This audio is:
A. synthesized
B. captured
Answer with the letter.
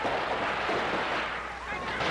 B